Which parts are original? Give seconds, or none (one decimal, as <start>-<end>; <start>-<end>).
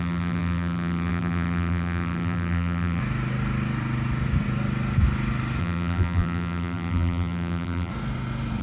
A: 3.0-5.6; 7.9-8.6